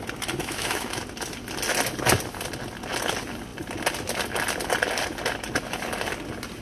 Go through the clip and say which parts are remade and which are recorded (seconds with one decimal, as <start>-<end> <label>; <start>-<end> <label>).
0.0-0.4 recorded; 0.4-1.0 remade; 1.0-6.6 recorded